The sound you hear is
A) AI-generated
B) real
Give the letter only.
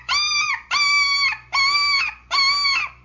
B